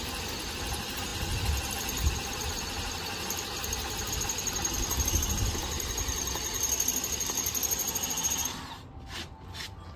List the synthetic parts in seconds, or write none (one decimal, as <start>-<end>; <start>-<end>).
none